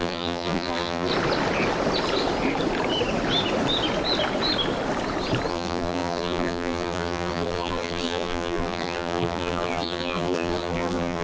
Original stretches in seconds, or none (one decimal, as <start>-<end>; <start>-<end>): 1.1-5.5